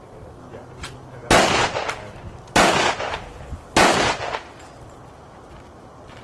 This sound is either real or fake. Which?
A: real